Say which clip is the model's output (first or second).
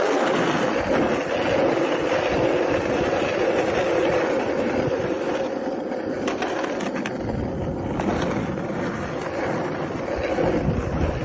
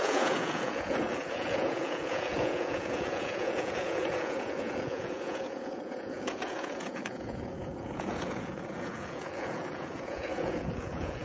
second